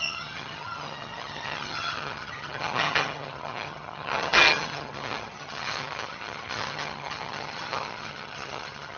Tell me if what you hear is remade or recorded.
remade